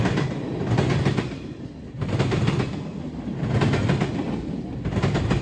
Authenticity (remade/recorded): recorded